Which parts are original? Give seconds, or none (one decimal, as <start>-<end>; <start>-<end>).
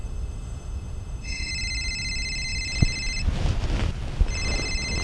1.5-5.0